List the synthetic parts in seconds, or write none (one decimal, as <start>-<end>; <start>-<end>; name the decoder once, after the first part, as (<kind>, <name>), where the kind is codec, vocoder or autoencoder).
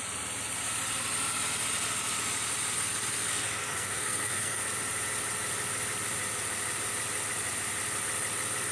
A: 3.3-4.6 (codec, SNAC)